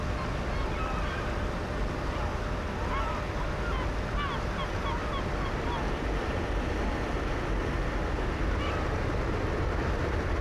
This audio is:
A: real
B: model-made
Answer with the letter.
A